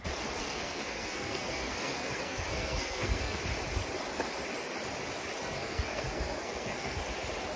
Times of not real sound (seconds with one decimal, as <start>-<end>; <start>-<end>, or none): 0.4-3.4; 5.4-7.0